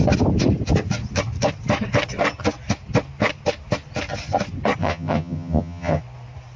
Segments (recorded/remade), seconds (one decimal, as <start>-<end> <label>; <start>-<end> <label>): 0.0-4.8 recorded; 4.8-6.0 remade; 6.0-6.6 recorded